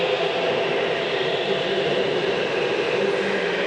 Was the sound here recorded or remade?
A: recorded